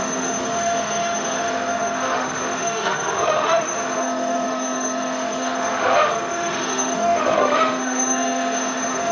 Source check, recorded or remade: remade